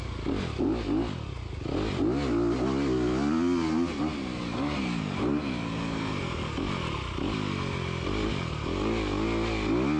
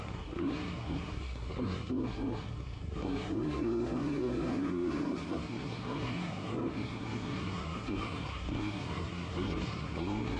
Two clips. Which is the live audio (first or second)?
first